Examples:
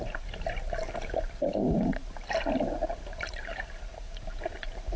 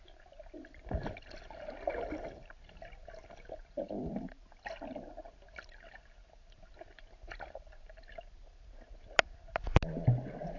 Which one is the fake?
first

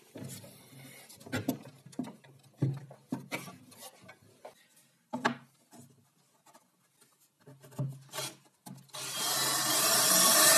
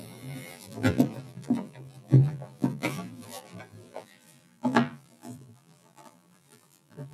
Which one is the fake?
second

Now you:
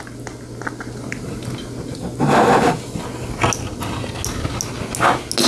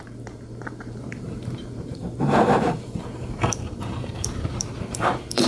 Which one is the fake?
second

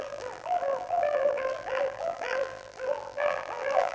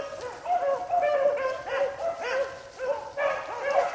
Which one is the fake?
first